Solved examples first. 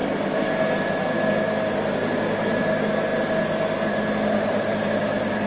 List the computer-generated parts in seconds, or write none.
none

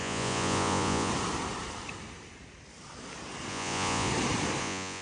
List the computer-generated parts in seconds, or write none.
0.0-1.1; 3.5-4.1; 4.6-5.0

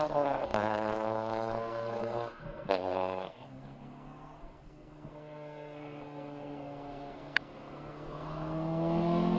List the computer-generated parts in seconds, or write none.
0.0-9.4